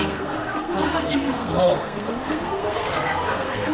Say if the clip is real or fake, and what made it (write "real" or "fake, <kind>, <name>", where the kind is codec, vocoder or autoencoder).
fake, codec, SNAC